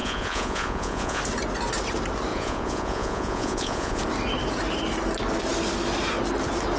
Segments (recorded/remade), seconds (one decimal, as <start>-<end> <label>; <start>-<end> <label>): 0.0-1.2 remade; 1.2-2.3 recorded; 2.3-4.0 remade; 4.0-6.8 recorded